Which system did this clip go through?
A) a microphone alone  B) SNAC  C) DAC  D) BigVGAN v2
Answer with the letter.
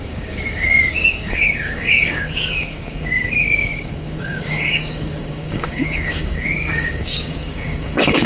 C